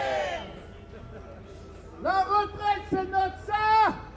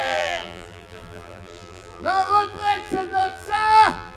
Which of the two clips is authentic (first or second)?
first